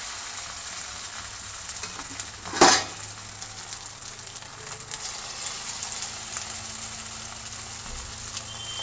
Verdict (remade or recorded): recorded